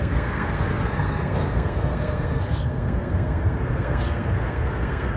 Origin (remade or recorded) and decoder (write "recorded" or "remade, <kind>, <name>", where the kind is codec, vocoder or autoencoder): remade, codec, SNAC